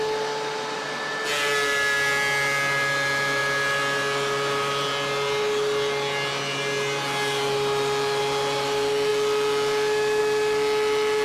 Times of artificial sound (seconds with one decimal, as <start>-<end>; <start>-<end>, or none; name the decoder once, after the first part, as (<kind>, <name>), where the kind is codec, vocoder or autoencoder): none